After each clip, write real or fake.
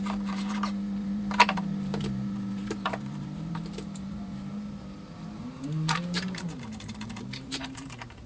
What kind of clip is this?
fake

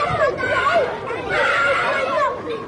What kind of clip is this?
fake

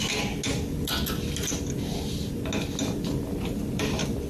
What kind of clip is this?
real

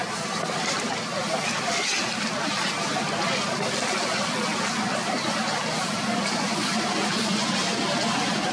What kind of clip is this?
real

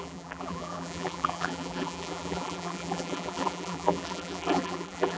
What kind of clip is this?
fake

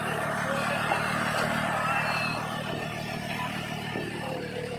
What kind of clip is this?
real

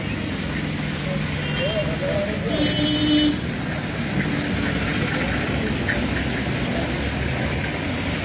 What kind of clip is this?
real